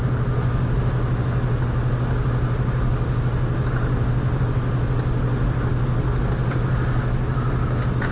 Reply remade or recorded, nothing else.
recorded